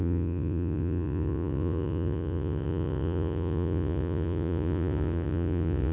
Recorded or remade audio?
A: remade